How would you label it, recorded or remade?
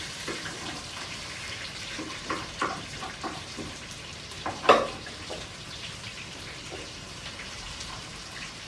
remade